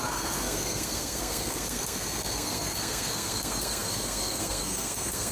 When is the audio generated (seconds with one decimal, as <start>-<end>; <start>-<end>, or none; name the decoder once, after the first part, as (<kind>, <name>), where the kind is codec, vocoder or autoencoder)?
0.0-5.3 (codec, SNAC)